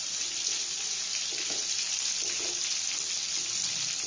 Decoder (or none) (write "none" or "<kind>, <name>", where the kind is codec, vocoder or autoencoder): none